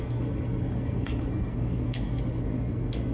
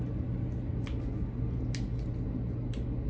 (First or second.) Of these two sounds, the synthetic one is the first